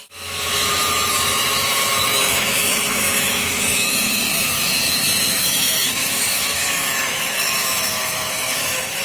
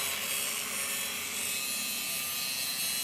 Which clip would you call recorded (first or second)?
second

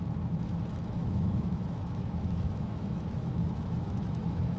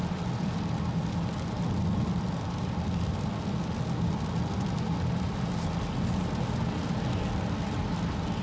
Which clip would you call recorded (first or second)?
second